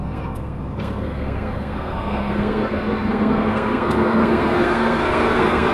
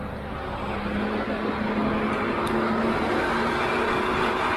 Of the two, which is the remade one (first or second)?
first